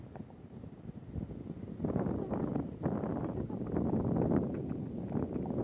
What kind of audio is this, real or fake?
real